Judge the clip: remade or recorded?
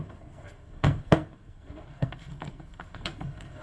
remade